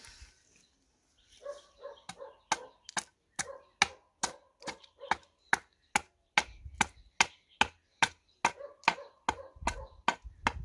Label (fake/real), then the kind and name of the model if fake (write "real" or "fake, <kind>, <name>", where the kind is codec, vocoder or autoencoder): real